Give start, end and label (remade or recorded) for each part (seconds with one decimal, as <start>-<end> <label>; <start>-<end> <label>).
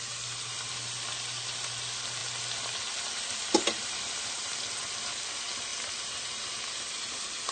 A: 0.0-7.5 recorded